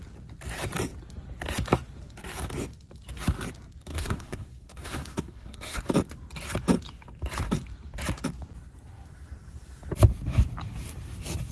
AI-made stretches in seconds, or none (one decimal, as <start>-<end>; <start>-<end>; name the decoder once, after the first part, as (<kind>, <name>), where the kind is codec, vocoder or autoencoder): 3.9-5.8 (codec, SNAC)